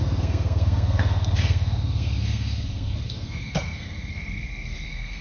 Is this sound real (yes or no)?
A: no